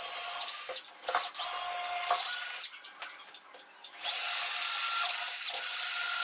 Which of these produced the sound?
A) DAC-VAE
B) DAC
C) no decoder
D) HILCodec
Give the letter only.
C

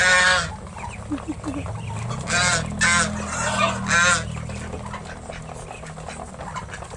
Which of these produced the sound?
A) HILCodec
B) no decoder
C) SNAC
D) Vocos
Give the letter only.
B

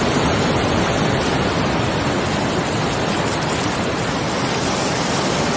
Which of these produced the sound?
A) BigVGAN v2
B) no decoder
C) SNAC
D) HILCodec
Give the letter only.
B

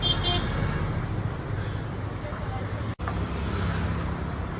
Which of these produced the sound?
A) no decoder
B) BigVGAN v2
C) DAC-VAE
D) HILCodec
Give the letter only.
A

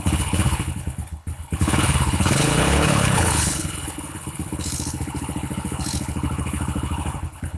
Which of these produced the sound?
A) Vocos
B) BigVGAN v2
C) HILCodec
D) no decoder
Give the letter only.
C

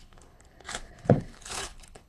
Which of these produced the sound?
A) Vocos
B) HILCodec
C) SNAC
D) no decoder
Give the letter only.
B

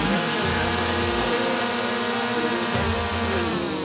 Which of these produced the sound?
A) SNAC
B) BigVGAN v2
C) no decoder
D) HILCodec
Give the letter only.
C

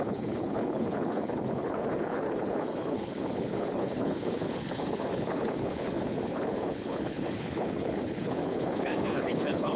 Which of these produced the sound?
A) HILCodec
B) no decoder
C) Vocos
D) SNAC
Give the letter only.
A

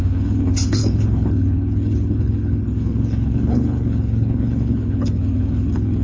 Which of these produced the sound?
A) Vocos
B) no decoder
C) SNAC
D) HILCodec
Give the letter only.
D